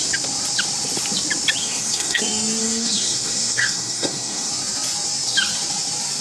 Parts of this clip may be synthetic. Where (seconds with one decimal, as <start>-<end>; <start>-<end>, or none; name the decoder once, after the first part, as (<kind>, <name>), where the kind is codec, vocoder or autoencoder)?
1.6-2.2 (codec, SNAC); 2.6-4.5